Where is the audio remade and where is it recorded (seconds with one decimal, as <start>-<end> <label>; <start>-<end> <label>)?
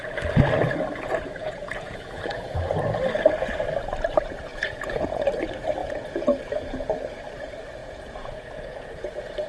0.0-1.4 recorded; 1.4-2.6 remade; 2.6-4.5 recorded; 4.5-5.3 remade; 5.3-5.8 recorded; 5.8-6.4 remade; 6.4-7.8 recorded; 7.8-9.1 remade; 9.1-9.5 recorded